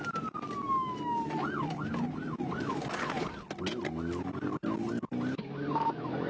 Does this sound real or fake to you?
real